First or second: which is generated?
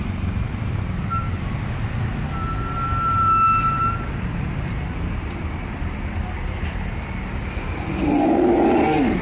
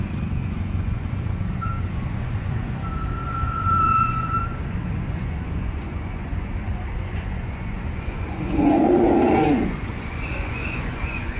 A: second